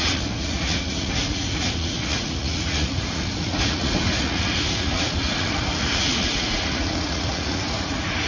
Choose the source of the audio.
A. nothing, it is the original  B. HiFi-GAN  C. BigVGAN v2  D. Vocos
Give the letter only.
D